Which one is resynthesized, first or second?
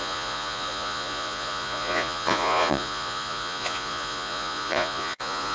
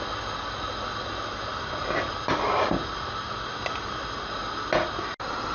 first